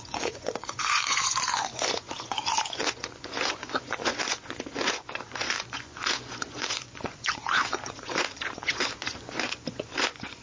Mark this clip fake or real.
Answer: fake